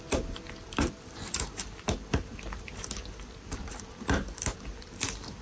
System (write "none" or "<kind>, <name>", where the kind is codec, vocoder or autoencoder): none